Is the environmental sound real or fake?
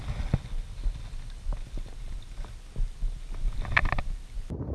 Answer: real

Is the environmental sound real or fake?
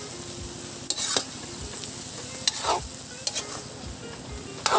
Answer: real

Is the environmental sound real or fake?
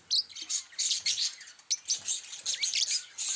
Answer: real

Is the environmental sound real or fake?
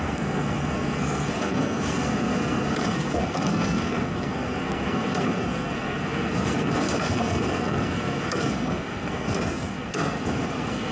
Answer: fake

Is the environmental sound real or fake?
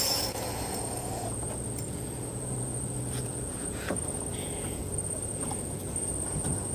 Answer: fake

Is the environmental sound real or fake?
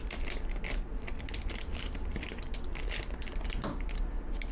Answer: real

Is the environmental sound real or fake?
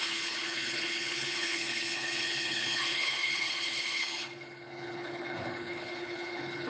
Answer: fake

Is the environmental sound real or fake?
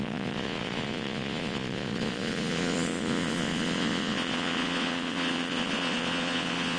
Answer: fake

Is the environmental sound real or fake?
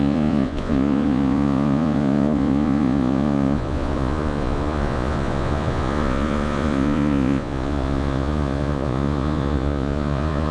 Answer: fake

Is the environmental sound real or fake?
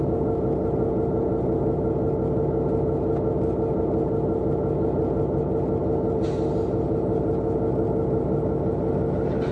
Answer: real